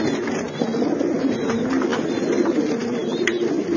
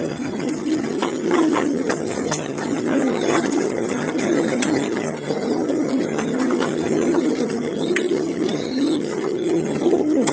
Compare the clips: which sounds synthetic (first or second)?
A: second